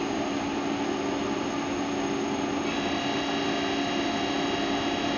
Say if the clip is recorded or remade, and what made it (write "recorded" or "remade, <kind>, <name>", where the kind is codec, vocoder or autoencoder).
recorded